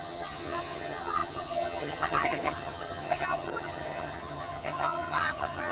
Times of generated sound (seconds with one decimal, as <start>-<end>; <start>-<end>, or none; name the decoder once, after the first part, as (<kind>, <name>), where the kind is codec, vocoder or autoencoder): 0.0-5.7 (vocoder, HiFi-GAN)